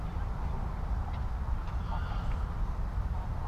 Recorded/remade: recorded